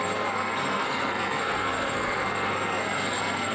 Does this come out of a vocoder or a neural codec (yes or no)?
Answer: yes